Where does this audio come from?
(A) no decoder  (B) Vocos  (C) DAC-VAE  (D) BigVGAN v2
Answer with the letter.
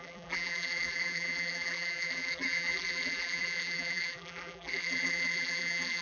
D